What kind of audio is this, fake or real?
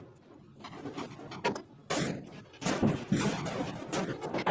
real